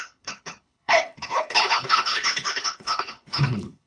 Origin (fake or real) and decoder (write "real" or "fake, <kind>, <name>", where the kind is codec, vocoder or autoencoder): fake, codec, HILCodec